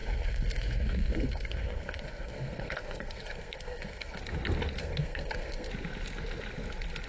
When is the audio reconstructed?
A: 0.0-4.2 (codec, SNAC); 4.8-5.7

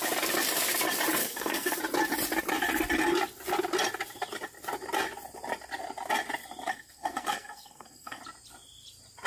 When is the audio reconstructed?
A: 1.2-1.8 (codec, SNAC); 6.7-8.2

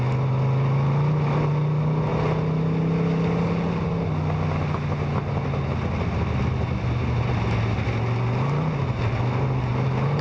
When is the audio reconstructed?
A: none

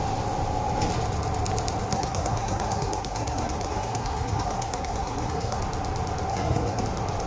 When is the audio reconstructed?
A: 1.9-5.6 (codec, SNAC); 6.3-6.8

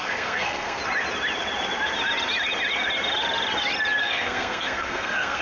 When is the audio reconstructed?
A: 0.0-0.8 (codec, SNAC); 4.0-5.4

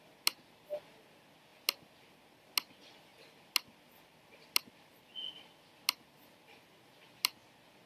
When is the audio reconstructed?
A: none

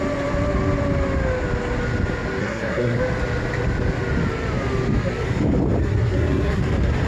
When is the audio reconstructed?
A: 2.4-3.0 (codec, SNAC); 5.8-6.6

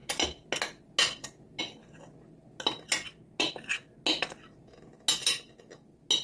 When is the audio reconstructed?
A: none